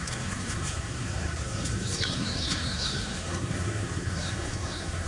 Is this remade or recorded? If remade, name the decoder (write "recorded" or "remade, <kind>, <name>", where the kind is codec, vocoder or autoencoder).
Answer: remade, codec, SNAC